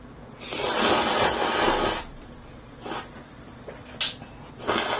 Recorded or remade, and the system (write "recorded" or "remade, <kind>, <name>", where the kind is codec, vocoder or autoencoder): recorded